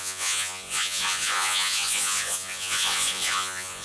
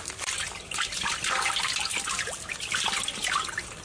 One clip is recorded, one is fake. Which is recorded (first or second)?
second